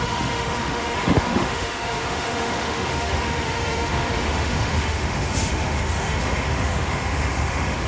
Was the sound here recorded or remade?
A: remade